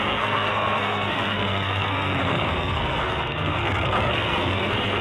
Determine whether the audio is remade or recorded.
remade